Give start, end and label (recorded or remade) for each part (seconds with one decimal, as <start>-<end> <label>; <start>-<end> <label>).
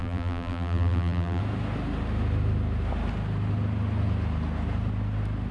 0.0-1.4 remade; 1.4-5.5 recorded